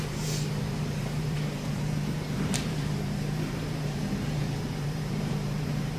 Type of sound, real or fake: fake